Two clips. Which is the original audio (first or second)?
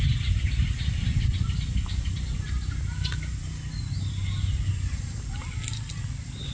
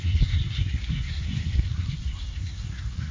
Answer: first